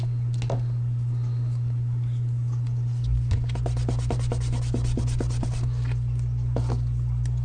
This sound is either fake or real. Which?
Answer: real